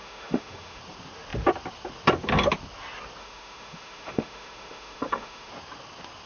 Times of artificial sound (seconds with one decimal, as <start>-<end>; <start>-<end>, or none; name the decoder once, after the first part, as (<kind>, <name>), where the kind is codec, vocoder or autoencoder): 0.0-0.8 (autoencoder, DAC-VAE); 3.2-5.5